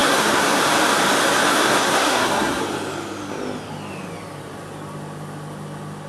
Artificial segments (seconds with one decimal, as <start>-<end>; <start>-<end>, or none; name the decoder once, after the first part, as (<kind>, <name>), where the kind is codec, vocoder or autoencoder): 0.0-0.6 (codec, SNAC); 1.5-2.6